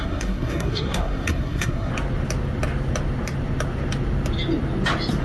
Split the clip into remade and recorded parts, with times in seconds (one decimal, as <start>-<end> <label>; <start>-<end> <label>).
0.0-1.9 remade; 1.9-5.2 recorded